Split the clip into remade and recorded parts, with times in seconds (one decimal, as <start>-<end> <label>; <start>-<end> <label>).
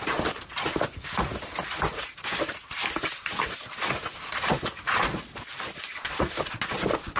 0.0-7.2 recorded